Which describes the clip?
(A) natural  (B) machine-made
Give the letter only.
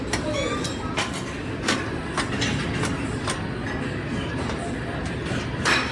A